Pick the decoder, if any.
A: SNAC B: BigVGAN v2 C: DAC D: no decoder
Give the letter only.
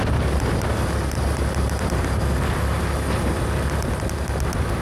D